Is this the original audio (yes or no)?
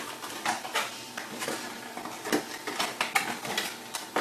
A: yes